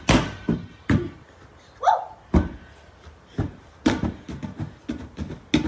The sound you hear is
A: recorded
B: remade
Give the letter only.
A